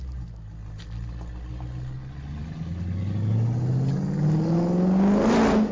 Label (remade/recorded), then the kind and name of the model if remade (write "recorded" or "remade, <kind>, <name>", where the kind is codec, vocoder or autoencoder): recorded